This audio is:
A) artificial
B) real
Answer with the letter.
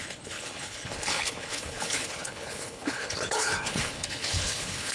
A